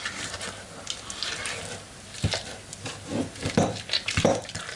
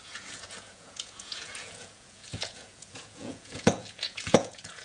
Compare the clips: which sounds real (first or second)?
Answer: first